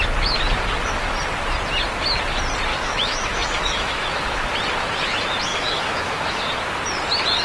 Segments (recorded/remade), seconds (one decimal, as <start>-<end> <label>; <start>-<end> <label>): 0.0-2.7 recorded; 2.7-4.5 remade; 4.5-5.5 recorded; 5.5-6.4 remade; 6.4-7.4 recorded

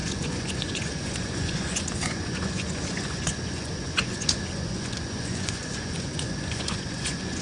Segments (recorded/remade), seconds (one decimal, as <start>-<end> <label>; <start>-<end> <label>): 0.0-7.4 remade

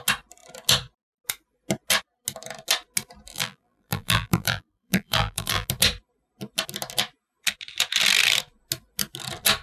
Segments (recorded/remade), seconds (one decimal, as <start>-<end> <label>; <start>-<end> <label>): 0.0-3.3 recorded; 3.3-5.7 remade; 5.7-9.6 recorded

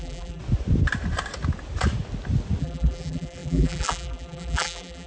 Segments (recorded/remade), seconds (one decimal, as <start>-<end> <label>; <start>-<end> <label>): 0.0-0.4 remade; 0.4-2.6 recorded; 2.6-5.1 remade

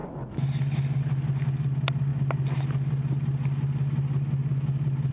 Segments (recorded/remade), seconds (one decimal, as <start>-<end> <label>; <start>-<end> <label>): 0.0-5.1 recorded

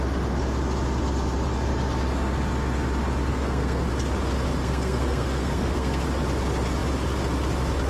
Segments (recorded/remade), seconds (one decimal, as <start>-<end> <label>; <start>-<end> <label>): 0.0-3.3 recorded; 3.3-3.9 remade; 3.9-4.6 recorded; 4.6-6.0 remade; 6.0-7.9 recorded

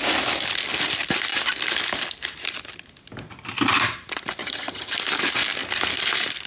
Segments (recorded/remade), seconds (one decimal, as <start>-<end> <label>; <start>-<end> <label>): 0.0-4.4 recorded; 4.4-4.9 remade; 4.9-6.5 recorded